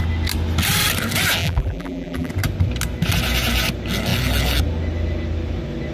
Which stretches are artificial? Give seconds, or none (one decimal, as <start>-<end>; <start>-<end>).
1.4-2.3